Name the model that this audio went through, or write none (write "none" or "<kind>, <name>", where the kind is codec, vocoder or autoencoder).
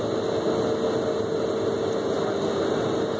none